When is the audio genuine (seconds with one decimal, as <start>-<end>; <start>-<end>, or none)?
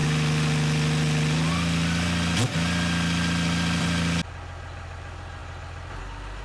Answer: 0.0-6.4